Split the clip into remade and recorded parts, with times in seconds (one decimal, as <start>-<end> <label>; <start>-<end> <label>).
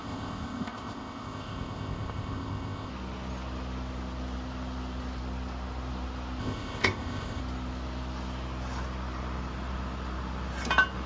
0.0-2.9 remade; 2.9-6.4 recorded; 6.4-7.4 remade; 7.4-11.1 recorded